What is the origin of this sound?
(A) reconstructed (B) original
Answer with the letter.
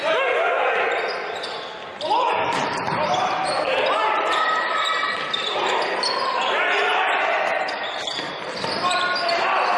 B